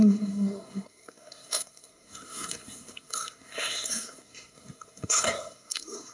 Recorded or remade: remade